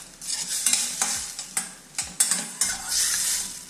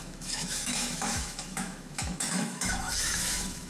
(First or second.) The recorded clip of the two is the first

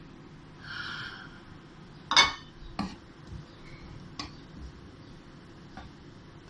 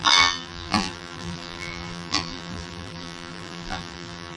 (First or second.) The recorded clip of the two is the first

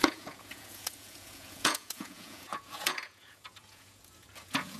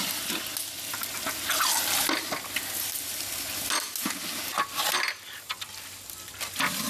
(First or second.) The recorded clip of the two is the second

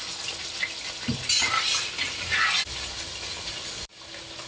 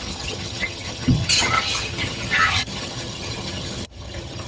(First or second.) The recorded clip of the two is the first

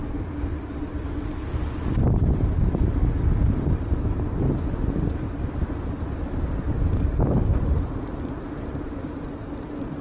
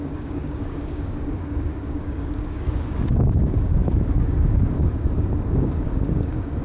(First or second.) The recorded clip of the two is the first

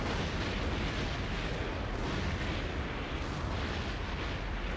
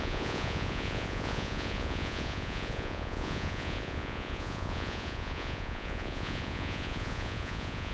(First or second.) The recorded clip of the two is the first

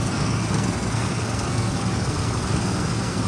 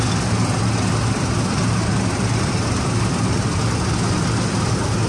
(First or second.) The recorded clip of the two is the second